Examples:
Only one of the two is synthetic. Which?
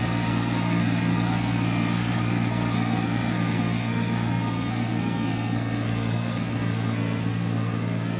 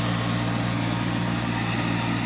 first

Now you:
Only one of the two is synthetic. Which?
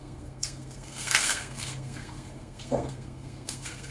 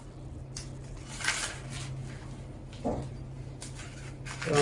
first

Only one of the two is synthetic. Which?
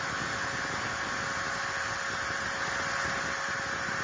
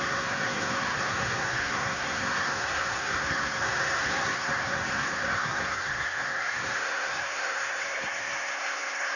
second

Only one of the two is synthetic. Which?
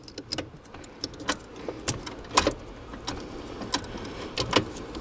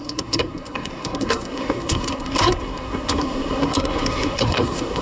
second